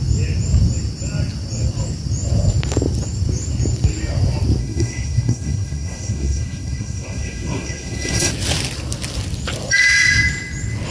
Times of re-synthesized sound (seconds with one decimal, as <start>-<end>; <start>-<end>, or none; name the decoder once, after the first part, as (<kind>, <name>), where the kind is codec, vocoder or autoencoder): 4.6-8.3 (codec, SNAC)

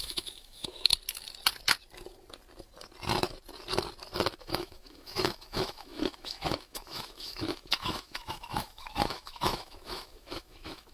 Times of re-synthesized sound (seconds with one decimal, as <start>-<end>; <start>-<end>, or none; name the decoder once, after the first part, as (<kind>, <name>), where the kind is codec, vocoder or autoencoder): 0.0-0.9 (autoencoder, DAC-VAE); 4.4-10.9

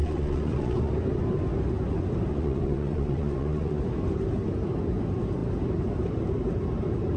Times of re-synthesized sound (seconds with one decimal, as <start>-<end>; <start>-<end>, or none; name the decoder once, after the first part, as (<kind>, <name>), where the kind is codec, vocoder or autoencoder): 0.0-0.9 (vocoder, Vocos); 2.3-3.8

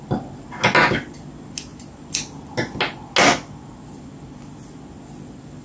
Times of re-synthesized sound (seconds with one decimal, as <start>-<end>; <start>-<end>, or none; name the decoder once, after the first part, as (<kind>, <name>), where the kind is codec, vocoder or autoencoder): none